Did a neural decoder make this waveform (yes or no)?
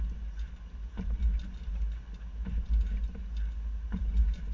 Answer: no